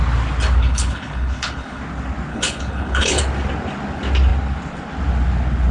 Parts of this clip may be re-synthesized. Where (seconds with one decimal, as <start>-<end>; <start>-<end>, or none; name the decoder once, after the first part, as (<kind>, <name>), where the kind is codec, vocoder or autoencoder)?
0.6-1.8 (codec, HILCodec); 2.3-3.2